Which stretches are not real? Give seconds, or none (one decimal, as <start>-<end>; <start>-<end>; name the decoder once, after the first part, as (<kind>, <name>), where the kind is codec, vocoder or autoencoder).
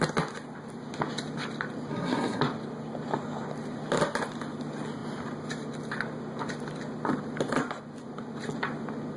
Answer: 1.9-2.4 (codec, SNAC)